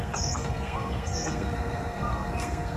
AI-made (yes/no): yes